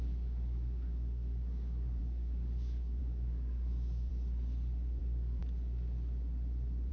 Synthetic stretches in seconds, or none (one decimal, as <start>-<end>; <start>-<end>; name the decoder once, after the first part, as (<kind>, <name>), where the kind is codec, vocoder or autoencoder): 0.0-4.1 (codec, DAC); 5.0-5.4